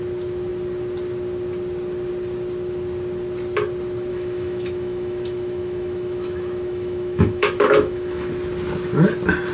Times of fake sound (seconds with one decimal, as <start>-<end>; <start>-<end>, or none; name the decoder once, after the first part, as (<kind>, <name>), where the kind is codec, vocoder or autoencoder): 4.1-8.3 (autoencoder, DAC-VAE)